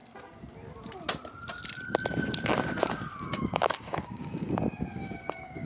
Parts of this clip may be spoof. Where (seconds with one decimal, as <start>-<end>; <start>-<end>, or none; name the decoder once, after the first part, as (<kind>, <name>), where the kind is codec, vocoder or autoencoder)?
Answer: 3.4-5.7 (codec, DAC)